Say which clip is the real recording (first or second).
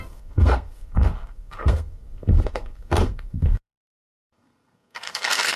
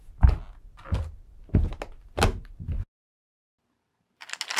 second